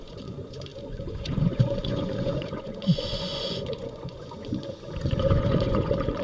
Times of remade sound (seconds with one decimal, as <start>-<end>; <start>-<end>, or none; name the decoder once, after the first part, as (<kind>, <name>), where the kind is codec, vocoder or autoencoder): 0.0-6.2 (vocoder, Vocos)